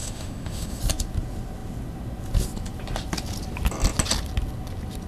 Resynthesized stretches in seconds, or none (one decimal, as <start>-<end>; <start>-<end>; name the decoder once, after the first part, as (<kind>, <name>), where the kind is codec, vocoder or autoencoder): 0.0-0.8 (autoencoder, DAC-VAE)